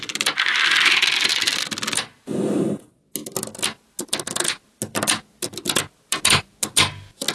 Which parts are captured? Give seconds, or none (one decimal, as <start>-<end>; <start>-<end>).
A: 0.0-7.3